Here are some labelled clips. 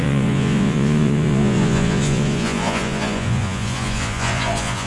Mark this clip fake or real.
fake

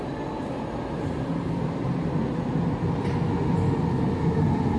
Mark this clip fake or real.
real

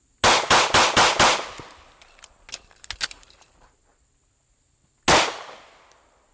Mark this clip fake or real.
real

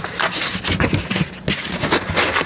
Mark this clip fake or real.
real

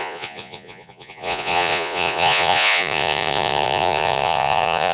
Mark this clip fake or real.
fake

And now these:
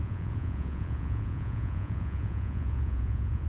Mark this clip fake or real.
fake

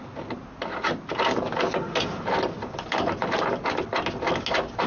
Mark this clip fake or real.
real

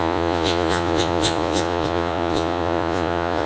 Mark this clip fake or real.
fake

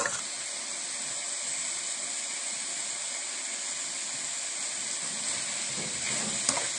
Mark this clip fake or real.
real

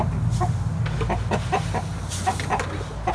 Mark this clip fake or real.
real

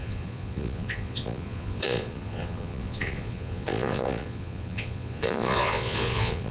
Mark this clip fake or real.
fake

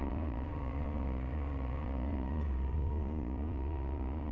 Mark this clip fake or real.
fake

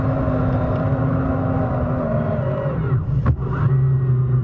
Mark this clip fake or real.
real